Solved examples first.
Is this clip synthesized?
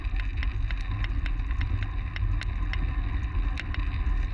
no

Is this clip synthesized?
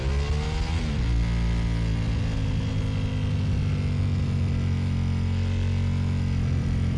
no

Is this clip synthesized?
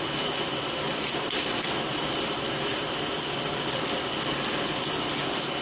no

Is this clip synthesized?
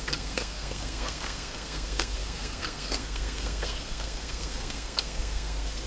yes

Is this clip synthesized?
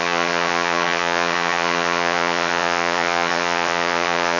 yes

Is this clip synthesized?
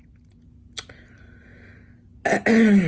no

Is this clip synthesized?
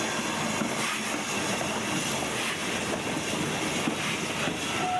no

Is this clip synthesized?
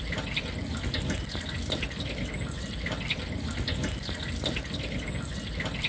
no